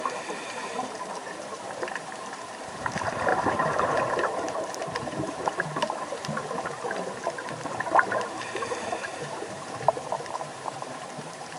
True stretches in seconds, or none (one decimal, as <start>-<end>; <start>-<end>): none